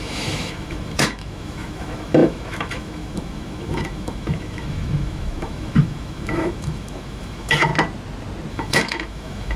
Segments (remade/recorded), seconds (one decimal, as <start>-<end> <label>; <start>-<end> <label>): 0.0-7.7 remade; 7.7-8.5 recorded; 8.5-9.6 remade